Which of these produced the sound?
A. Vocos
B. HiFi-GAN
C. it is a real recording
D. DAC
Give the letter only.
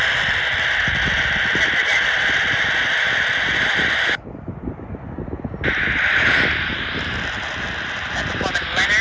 C